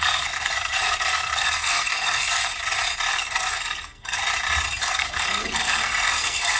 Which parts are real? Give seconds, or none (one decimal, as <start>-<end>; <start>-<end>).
2.5-3.1; 4.2-4.8